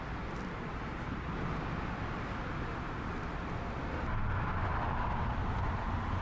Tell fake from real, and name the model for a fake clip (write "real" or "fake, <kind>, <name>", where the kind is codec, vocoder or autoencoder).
real